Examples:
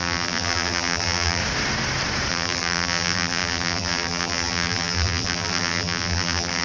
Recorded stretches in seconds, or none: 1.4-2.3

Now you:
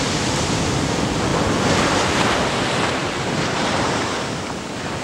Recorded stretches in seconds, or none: 0.0-3.0; 3.9-5.0

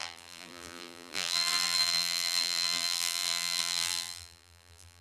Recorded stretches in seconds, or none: none

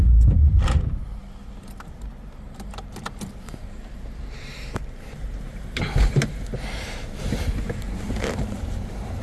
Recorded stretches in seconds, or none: 1.2-1.8